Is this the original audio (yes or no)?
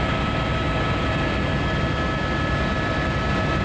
yes